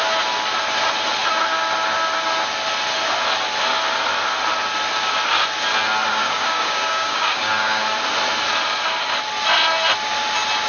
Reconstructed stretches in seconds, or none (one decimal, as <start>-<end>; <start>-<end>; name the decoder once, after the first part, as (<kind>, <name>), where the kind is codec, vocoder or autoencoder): 6.1-7.8 (codec, DAC)